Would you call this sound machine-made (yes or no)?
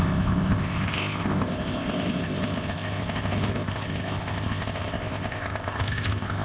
yes